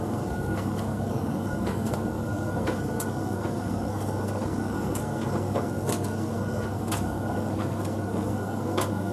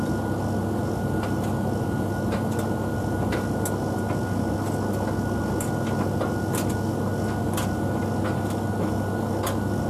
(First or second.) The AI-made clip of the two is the first